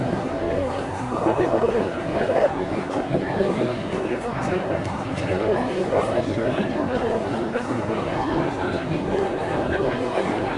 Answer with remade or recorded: remade